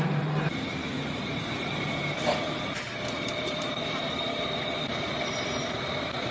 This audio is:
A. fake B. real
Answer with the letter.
A